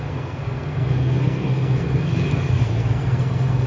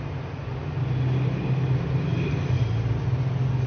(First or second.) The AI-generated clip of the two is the first